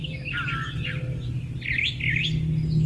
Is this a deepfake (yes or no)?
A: no